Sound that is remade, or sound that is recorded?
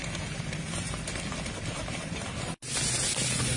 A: recorded